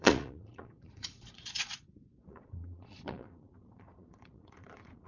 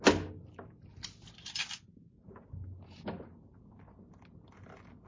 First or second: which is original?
second